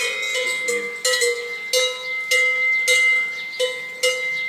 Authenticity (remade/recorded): recorded